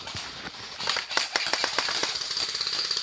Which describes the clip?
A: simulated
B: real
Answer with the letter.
B